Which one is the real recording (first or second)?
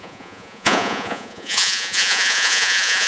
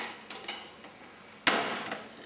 second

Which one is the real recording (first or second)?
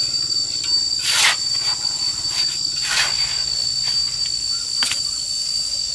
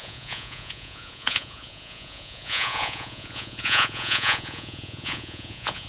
first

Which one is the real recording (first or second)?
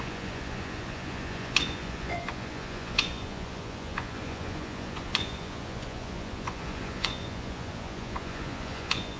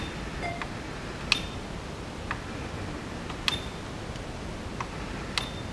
second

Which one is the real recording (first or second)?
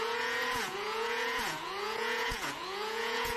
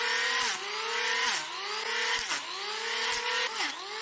second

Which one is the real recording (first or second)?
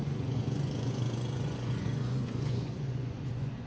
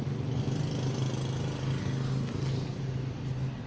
second